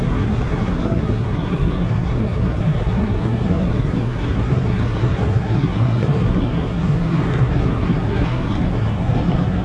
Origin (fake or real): fake